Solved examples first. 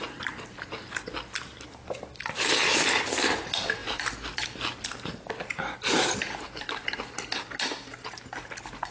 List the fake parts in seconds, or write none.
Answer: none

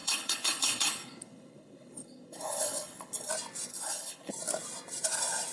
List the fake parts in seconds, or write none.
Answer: 0.0-3.3 (codec, HILCodec); 3.7-4.3

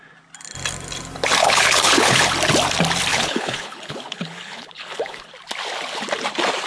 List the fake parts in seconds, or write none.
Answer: 1.4-2.2 (codec, HILCodec); 3.1-5.3

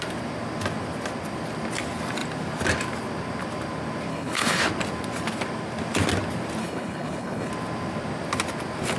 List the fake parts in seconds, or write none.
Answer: 4.1-4.6 (codec, HILCodec); 6.6-7.5

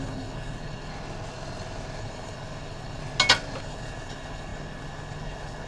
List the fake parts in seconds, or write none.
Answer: 0.0-0.9 (codec, HILCodec); 2.0-3.0; 3.6-5.7

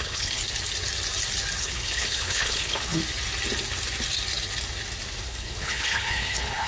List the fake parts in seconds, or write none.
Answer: 0.0-0.4 (codec, HILCodec); 1.6-3.0; 5.2-6.7

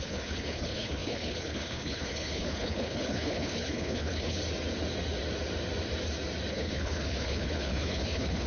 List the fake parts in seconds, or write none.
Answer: 0.0-4.4 (codec, HILCodec); 6.5-8.5

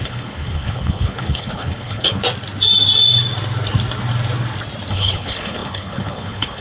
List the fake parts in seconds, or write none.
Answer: 0.0-2.2 (codec, HILCodec); 4.9-6.6